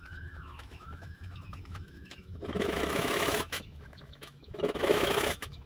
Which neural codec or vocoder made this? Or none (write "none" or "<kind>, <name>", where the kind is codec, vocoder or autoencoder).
autoencoder, DAC-VAE